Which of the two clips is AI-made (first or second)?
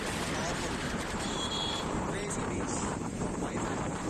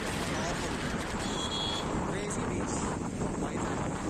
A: first